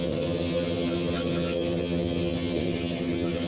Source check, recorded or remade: remade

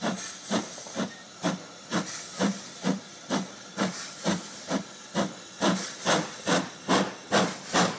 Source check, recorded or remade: recorded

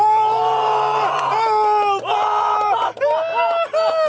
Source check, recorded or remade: recorded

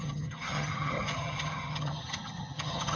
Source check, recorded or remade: remade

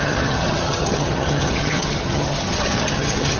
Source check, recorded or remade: remade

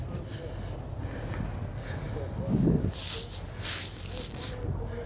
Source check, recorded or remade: recorded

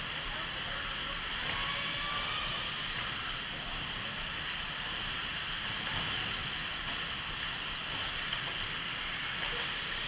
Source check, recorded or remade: recorded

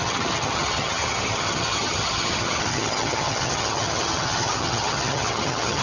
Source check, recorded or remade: remade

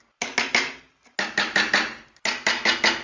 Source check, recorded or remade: recorded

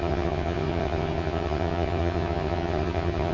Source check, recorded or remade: remade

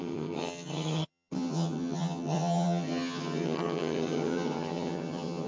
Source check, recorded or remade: remade